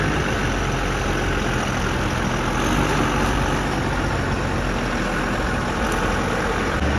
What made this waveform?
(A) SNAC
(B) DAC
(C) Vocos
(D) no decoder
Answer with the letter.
D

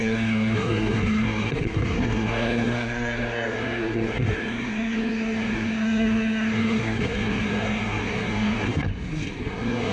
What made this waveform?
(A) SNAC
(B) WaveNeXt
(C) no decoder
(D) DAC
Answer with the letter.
A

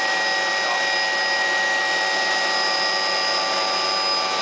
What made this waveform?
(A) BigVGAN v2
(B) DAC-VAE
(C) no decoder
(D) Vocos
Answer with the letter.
C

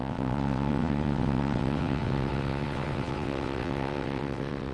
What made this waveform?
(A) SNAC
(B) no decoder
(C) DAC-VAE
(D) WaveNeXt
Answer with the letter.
D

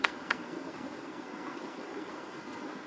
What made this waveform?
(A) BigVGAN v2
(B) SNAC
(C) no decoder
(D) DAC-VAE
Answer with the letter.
B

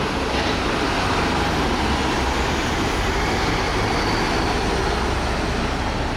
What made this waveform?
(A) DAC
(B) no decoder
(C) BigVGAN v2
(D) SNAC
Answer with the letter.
B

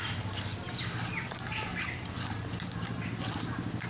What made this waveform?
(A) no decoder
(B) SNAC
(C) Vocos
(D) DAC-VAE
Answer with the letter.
A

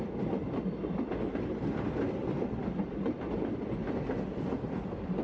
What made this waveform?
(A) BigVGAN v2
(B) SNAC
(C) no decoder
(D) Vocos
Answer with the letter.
A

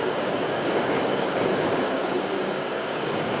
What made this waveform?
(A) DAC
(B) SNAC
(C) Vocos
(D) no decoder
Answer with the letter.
A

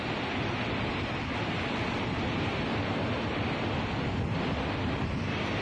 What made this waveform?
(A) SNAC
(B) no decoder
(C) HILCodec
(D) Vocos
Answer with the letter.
B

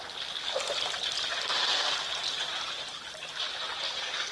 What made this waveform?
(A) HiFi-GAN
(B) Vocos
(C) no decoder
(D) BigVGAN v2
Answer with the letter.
C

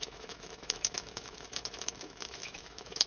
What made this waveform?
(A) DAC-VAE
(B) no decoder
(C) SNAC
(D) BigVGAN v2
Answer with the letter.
A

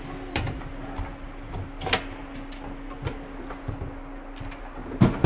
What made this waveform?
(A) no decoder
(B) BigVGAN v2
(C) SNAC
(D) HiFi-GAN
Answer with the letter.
A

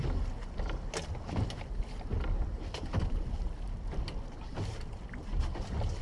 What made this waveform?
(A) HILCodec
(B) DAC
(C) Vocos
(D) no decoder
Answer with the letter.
D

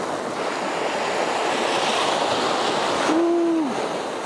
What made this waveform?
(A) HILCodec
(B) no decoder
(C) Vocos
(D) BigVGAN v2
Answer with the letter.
B